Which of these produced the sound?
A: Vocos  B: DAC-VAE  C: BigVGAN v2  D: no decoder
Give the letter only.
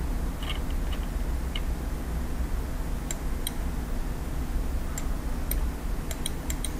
D